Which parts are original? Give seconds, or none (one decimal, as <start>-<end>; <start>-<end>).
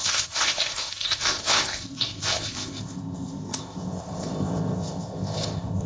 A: none